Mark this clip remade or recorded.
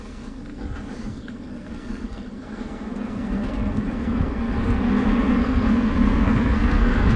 remade